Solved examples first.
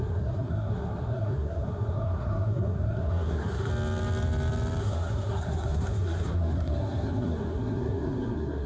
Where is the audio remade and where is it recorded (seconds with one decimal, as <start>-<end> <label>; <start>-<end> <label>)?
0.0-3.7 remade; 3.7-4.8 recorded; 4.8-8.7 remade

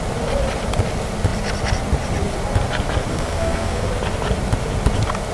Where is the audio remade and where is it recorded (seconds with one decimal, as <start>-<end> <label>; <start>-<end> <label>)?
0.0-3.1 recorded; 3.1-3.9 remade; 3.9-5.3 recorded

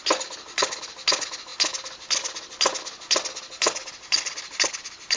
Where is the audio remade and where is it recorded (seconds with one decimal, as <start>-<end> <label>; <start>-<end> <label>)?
0.0-5.2 recorded